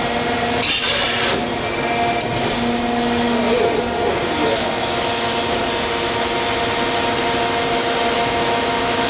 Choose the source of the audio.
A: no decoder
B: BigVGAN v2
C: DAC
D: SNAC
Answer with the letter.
A